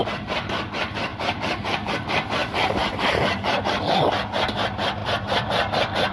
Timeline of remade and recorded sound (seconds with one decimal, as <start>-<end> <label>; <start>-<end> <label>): 0.0-1.1 recorded; 1.1-1.9 remade; 1.9-2.4 recorded; 2.4-3.6 remade; 3.6-6.1 recorded